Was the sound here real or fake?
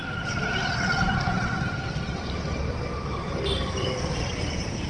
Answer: real